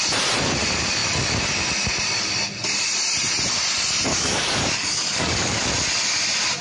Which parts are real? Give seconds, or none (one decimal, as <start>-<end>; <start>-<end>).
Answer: 0.0-4.1; 5.7-6.6